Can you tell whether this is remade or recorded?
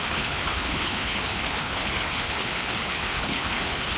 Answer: remade